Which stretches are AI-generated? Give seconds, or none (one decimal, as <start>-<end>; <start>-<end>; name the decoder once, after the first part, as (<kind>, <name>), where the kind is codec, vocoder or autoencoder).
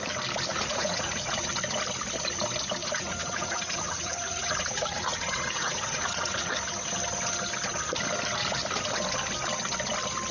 0.5-1.5 (vocoder, Vocos); 2.8-6.5